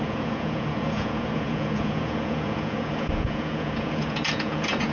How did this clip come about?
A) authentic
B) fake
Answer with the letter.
B